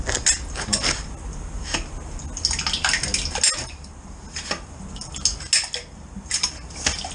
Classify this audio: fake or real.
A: real